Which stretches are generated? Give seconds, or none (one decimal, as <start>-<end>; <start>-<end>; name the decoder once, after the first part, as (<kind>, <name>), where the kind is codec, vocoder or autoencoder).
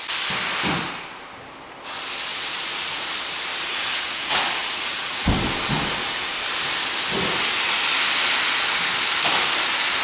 2.3-3.1 (vocoder, Vocos); 3.7-5.3